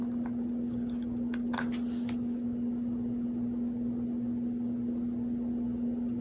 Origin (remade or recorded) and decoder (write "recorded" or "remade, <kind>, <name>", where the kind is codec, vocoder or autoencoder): recorded